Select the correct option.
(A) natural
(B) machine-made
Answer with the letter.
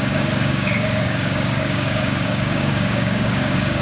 B